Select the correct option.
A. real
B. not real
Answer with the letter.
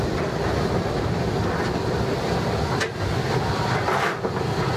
A